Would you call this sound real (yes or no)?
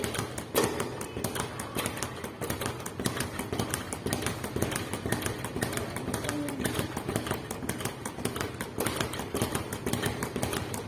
yes